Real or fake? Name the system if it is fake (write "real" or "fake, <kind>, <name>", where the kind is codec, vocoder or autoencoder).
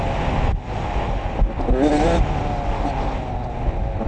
real